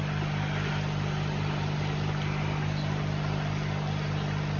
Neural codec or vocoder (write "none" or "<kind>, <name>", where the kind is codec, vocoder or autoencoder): none